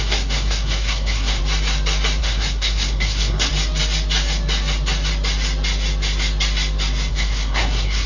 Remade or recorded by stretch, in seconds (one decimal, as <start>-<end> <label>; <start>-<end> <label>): 0.0-1.4 remade; 1.4-2.2 recorded; 2.2-3.5 remade; 3.5-7.1 recorded; 7.1-8.1 remade

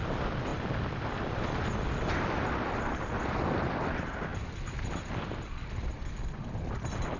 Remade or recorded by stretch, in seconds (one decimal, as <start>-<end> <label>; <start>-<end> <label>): 0.0-7.2 recorded

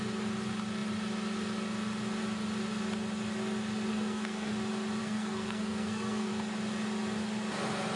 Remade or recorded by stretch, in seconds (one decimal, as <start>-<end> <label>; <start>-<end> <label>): 0.0-3.9 recorded; 3.9-4.5 remade; 4.5-5.0 recorded; 5.0-6.3 remade; 6.3-8.0 recorded

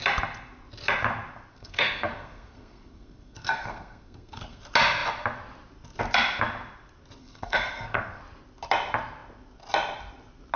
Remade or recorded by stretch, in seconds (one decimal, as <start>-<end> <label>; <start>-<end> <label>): 0.0-1.5 recorded; 1.5-4.6 remade; 4.6-7.2 recorded; 7.2-8.2 remade; 8.2-10.6 recorded

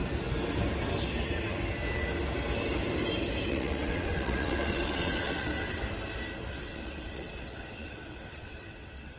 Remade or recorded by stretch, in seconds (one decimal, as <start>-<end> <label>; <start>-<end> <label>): 0.0-3.5 recorded; 3.5-5.8 remade; 5.8-6.5 recorded; 6.5-9.2 remade

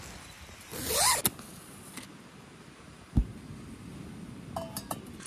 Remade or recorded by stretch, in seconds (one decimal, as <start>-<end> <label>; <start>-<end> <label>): 0.0-1.2 remade; 1.2-2.1 recorded; 2.1-5.3 remade

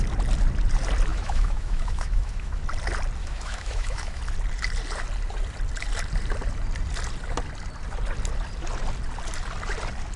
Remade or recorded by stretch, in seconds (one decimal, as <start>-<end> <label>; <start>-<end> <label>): 0.0-1.1 recorded; 1.1-2.6 remade; 2.6-3.2 recorded; 3.2-4.2 remade; 4.2-10.2 recorded

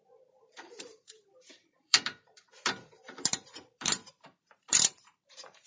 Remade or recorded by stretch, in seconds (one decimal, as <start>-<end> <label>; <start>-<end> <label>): 0.0-5.7 remade